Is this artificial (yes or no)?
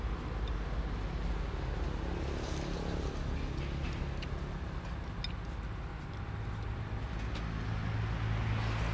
no